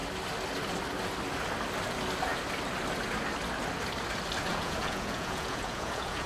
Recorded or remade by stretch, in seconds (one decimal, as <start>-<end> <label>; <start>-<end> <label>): 0.0-4.5 recorded; 4.5-6.3 remade

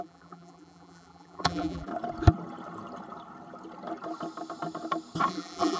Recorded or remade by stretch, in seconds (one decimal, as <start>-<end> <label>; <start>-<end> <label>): 0.0-1.9 remade; 1.9-5.3 recorded; 5.3-5.8 remade

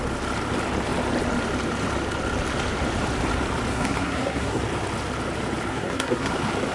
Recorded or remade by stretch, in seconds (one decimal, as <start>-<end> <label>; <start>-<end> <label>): 0.0-3.7 recorded; 3.7-4.6 remade; 4.6-5.7 recorded; 5.7-6.3 remade; 6.3-6.7 recorded

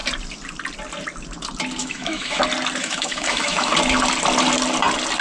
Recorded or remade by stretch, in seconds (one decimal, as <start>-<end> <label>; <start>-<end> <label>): 0.0-1.8 recorded; 1.8-2.4 remade; 2.4-2.8 recorded; 2.8-3.7 remade; 3.7-5.2 recorded

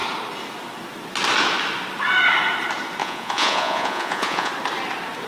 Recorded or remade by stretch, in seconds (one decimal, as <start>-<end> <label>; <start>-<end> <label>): 0.0-3.0 recorded; 3.0-4.5 remade; 4.5-5.3 recorded

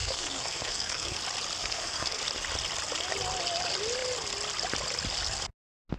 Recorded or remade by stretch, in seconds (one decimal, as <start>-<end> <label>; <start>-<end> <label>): 0.0-1.2 remade; 1.2-1.6 recorded; 1.6-2.2 remade; 2.2-6.0 recorded

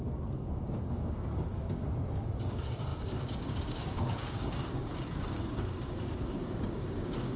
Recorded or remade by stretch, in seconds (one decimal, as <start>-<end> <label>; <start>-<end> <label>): 0.0-7.4 remade

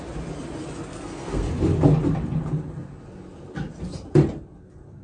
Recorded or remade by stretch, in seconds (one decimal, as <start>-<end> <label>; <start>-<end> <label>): 0.0-0.9 recorded; 0.9-1.5 remade; 1.5-5.0 recorded